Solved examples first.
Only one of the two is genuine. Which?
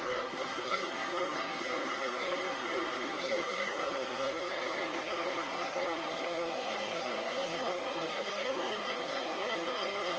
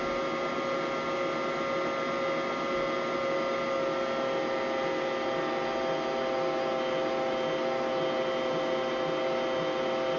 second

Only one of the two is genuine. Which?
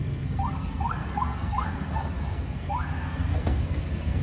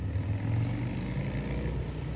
second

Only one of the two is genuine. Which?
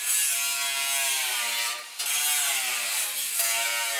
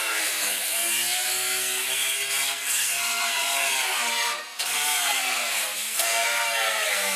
first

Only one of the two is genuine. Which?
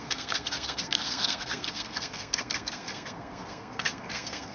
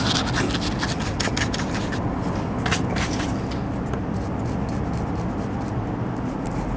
second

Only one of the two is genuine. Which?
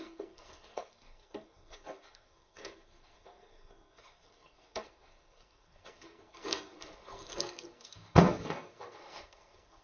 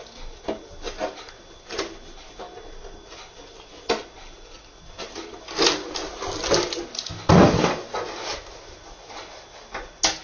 second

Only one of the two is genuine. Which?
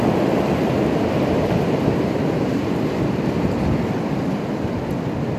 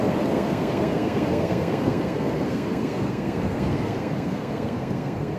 first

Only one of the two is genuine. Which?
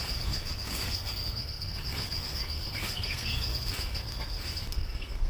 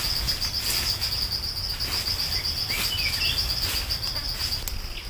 second